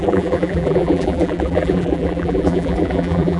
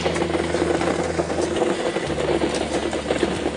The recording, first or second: second